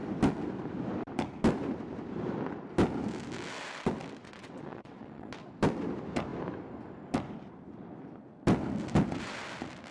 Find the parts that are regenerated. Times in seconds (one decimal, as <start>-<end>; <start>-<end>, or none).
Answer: 4.2-5.3